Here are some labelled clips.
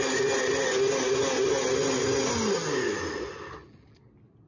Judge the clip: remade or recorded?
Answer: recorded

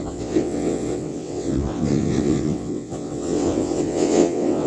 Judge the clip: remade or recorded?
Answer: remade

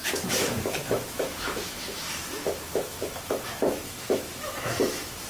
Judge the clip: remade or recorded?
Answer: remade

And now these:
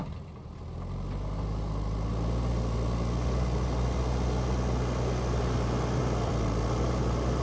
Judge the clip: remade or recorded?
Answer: recorded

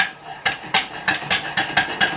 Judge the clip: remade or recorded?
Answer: recorded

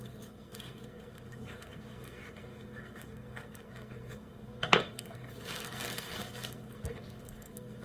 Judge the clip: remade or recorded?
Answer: remade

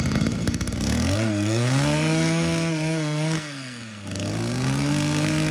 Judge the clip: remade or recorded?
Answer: remade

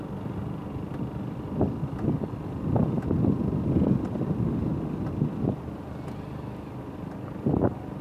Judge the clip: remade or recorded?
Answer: recorded